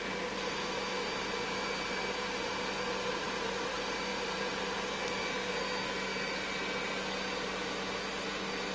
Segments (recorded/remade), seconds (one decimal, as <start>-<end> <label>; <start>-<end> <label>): 0.0-8.7 recorded